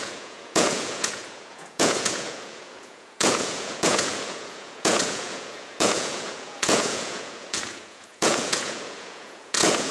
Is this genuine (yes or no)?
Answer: no